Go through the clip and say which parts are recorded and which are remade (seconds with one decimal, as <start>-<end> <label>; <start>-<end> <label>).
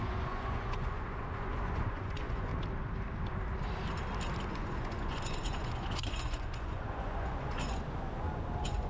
0.0-2.5 remade; 2.5-4.5 recorded; 4.5-8.9 remade